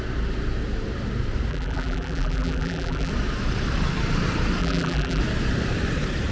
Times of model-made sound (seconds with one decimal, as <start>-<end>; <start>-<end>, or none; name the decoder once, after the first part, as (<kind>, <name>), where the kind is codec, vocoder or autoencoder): 1.5-3.1 (vocoder, BigVGAN v2); 4.6-5.2